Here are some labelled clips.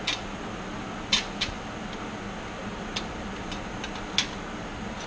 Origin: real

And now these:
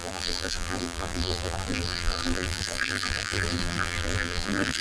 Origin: fake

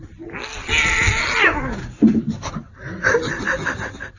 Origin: real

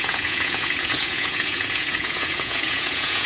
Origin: fake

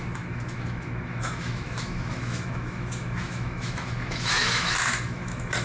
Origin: fake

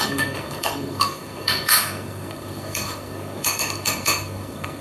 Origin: fake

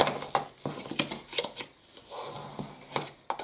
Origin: real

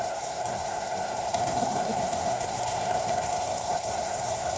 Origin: fake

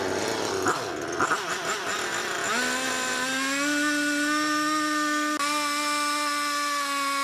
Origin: real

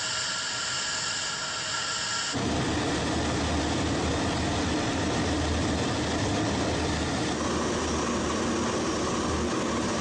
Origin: real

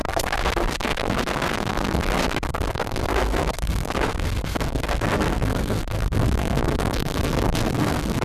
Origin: fake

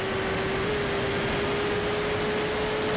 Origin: real